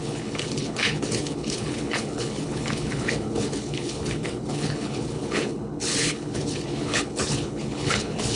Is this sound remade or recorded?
remade